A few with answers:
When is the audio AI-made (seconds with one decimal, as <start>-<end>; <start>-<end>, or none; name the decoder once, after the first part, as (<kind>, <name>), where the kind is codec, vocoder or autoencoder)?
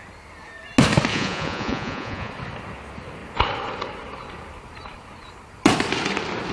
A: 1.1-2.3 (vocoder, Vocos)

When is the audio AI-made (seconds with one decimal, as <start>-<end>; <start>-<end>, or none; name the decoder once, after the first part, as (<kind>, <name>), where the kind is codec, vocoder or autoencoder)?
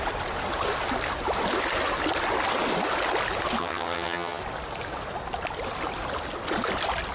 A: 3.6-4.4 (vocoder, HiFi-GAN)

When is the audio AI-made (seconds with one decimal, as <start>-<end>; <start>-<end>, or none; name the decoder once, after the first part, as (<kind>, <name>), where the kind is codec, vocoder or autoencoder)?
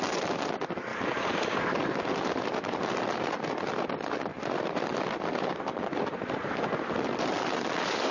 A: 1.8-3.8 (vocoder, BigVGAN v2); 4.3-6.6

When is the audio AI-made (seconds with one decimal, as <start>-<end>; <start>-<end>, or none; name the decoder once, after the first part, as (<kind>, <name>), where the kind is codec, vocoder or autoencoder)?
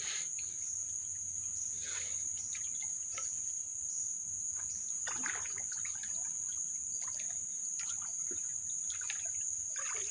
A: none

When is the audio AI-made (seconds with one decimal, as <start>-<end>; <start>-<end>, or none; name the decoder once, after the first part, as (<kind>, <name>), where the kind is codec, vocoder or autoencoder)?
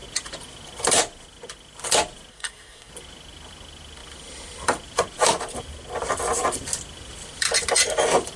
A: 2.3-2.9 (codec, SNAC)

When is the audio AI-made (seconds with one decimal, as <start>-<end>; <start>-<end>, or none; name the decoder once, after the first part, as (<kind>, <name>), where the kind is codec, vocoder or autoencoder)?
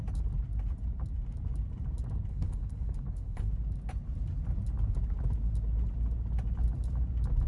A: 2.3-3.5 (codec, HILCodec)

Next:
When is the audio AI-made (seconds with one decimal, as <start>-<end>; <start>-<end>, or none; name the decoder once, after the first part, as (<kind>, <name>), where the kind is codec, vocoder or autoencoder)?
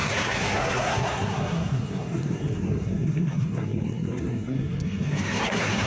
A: 0.0-5.9 (codec, SNAC)